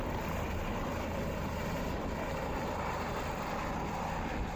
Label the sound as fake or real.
real